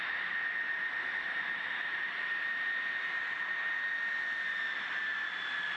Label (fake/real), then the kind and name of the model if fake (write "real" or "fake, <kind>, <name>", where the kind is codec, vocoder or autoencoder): real